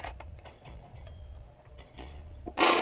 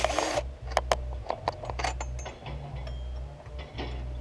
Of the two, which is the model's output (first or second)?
first